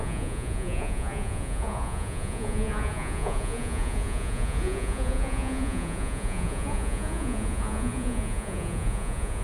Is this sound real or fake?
fake